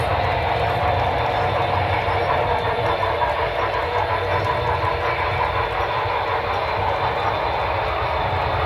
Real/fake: real